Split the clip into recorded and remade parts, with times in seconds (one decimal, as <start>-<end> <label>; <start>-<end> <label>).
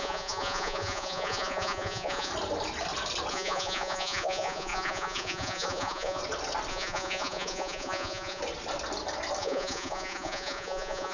0.0-2.3 remade; 2.3-3.3 recorded; 3.3-6.2 remade; 6.2-6.7 recorded; 6.7-8.4 remade; 8.4-9.4 recorded; 9.4-11.1 remade